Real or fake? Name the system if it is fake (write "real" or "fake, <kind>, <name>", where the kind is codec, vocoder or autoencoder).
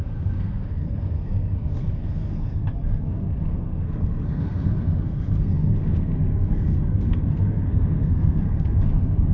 fake, codec, SNAC